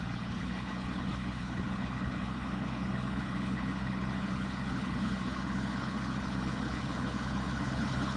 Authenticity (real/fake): fake